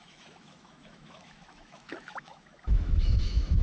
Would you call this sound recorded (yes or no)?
no